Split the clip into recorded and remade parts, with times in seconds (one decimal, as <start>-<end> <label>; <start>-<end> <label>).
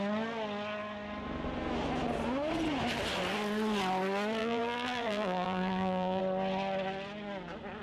0.0-4.4 recorded; 4.4-6.2 remade; 6.2-7.8 recorded